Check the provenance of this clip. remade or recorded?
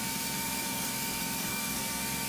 remade